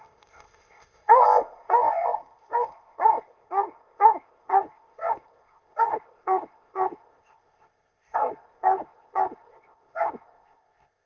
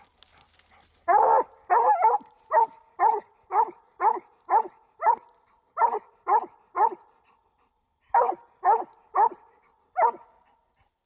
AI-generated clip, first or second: first